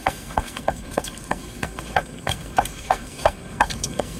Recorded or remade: remade